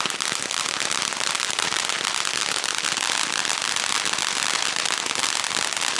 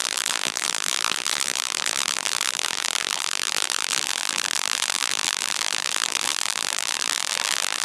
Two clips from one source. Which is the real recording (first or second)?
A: first